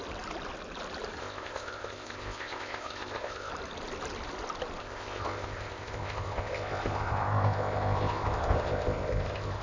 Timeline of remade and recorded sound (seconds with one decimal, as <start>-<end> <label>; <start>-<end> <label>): 0.0-1.2 recorded; 1.2-3.5 remade; 3.5-4.8 recorded; 4.8-9.6 remade